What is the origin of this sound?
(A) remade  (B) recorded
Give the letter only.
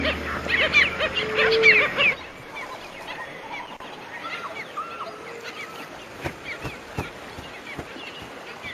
B